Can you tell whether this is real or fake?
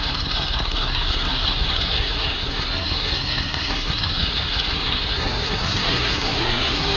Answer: fake